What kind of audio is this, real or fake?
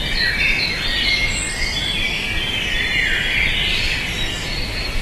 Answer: real